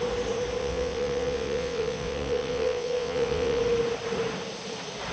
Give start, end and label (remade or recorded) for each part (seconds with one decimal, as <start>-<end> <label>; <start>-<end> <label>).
0.0-0.6 recorded; 0.6-3.6 remade; 3.6-5.1 recorded